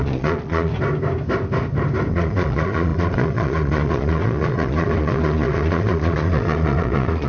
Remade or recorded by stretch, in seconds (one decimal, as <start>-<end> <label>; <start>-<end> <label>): 0.0-0.7 remade; 0.7-2.1 recorded; 2.1-7.3 remade